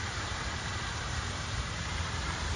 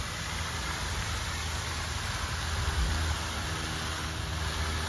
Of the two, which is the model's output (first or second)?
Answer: first